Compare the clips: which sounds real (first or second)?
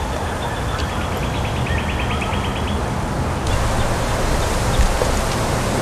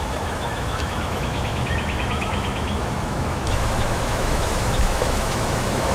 first